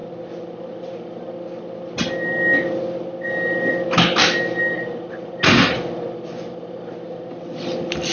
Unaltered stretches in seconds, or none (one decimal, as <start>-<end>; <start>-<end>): 0.0-8.1